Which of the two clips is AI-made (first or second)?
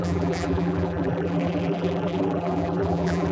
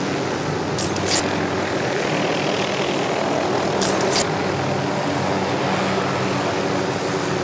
first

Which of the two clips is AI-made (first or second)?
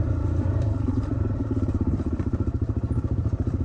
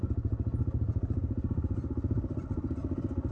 first